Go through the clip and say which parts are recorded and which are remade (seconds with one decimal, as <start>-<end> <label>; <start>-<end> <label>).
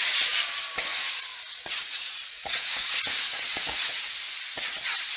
0.0-0.9 recorded; 0.9-4.0 remade; 4.0-5.2 recorded